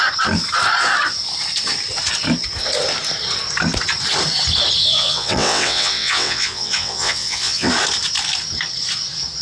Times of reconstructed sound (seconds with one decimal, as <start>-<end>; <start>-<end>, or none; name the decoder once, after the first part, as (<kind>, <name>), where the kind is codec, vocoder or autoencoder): 4.8-7.7 (vocoder, WaveNeXt)